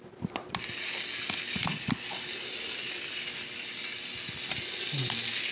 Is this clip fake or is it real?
real